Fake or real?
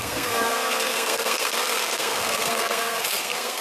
fake